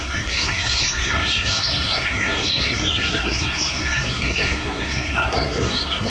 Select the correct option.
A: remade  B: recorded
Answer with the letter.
A